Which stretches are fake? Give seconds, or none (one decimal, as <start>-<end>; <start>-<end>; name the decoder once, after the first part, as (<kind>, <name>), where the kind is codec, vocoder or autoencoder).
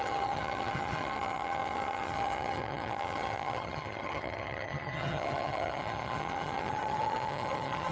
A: 0.0-7.9 (vocoder, HiFi-GAN)